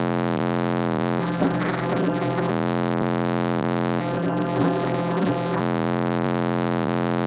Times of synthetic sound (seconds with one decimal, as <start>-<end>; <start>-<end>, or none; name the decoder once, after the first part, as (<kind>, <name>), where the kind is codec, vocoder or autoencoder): 1.2-2.5 (vocoder, BigVGAN v2); 4.0-5.6